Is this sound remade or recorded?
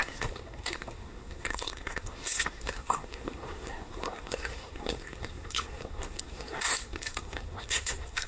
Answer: remade